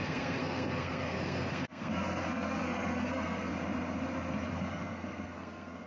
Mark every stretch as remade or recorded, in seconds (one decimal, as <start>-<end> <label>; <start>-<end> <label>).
0.0-3.5 remade; 3.5-4.5 recorded; 4.5-5.9 remade